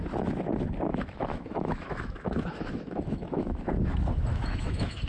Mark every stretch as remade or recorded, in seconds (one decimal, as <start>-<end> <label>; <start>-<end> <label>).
0.0-0.9 recorded; 0.9-3.7 remade; 3.7-4.3 recorded; 4.3-5.1 remade